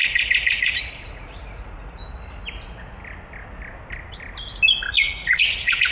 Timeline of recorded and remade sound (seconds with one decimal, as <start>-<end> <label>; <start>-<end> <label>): 0.0-2.0 remade; 2.0-2.6 recorded; 2.6-3.0 remade; 3.0-4.9 recorded; 4.9-5.9 remade